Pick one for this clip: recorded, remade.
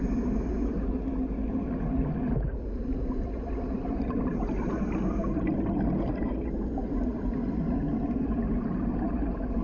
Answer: recorded